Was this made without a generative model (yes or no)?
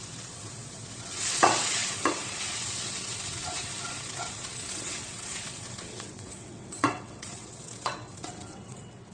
no